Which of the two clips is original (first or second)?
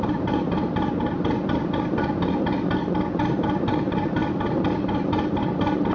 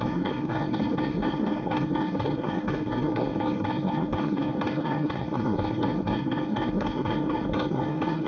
first